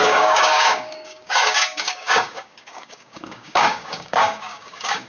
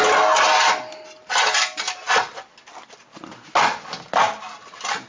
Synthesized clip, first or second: first